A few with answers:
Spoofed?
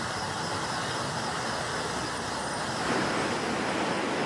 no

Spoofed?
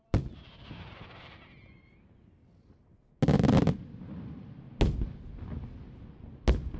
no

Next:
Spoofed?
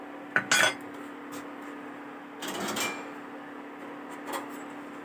no